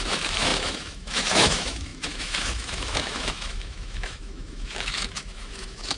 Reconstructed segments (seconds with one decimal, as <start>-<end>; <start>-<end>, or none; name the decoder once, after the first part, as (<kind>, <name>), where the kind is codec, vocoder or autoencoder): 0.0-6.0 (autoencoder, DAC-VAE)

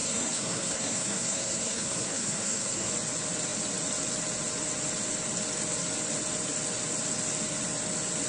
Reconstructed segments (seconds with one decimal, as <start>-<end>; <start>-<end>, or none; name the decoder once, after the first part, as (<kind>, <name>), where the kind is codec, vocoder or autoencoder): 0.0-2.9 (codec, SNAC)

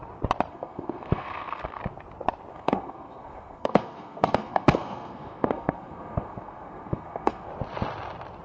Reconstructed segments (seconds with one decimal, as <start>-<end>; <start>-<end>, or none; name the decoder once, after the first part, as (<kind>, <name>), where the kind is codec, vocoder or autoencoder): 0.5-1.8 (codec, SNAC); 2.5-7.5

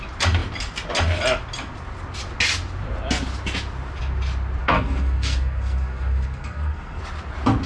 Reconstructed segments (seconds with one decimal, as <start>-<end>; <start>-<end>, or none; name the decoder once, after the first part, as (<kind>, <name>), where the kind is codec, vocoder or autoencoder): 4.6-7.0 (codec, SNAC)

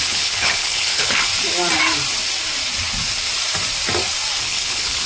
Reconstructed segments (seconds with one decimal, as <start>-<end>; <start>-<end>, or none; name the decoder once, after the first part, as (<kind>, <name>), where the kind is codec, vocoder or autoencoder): 0.0-1.3 (codec, HILCodec); 4.4-5.1

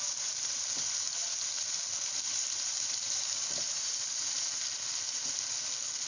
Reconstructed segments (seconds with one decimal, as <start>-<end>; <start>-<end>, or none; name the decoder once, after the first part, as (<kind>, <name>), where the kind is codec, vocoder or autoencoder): none

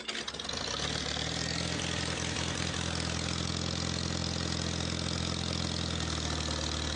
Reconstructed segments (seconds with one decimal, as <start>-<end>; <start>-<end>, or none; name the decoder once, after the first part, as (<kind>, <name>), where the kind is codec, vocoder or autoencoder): none

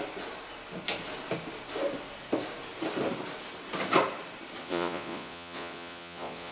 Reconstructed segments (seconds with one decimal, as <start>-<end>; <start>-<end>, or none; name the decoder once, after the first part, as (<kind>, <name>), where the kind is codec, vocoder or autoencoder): 4.6-6.5 (vocoder, Vocos)